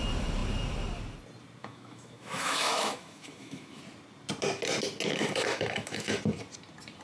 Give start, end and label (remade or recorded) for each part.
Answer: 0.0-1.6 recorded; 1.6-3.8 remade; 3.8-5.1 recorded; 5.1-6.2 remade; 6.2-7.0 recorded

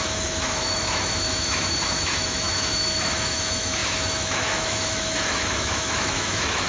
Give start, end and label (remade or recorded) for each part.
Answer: 0.0-6.7 remade